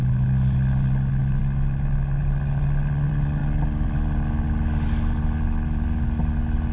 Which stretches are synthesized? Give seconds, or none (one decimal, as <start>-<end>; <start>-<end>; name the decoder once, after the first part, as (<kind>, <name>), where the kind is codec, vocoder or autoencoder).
none